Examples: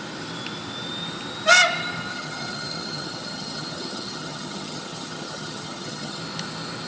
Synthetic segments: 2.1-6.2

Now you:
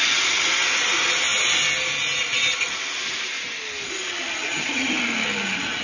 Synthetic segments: 4.5-5.0

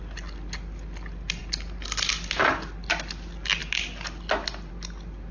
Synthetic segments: none